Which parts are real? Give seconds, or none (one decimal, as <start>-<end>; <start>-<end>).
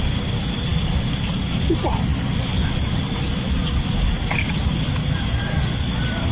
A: 0.0-6.3